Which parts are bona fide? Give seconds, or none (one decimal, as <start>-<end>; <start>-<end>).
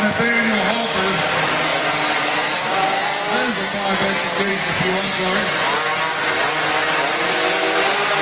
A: 0.0-8.2